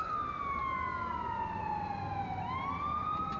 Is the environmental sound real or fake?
real